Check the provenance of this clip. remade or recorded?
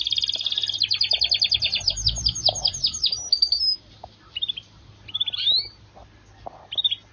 recorded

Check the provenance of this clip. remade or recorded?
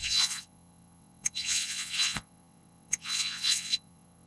remade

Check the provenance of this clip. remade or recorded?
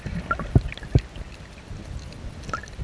recorded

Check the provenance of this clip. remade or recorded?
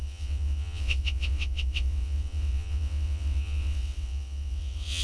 remade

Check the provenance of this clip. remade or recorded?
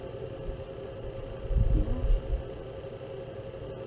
recorded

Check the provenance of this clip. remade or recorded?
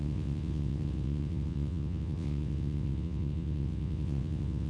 remade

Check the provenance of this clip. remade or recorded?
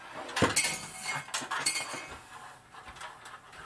recorded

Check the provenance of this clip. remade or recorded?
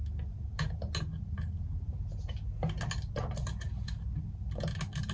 recorded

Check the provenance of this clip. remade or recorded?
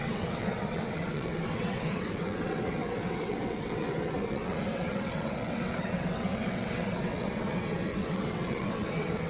remade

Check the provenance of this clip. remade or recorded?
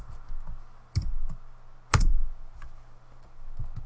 recorded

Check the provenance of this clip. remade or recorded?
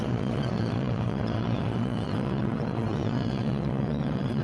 remade